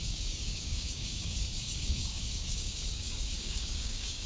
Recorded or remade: remade